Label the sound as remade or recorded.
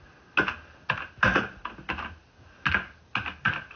recorded